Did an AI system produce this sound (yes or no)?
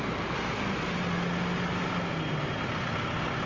no